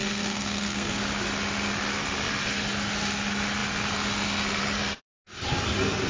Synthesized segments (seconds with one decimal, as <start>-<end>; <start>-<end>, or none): 0.0-1.0